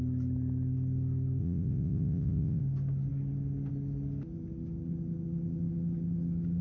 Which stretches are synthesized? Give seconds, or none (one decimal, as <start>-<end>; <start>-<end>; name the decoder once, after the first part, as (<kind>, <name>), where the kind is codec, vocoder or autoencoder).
1.4-2.6 (vocoder, Vocos)